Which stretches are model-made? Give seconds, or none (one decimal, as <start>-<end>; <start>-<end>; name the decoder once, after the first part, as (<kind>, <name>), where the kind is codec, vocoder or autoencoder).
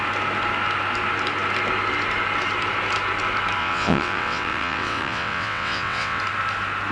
3.6-6.2 (vocoder, WaveNeXt)